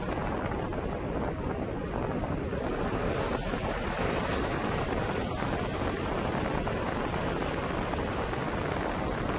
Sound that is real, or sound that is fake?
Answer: real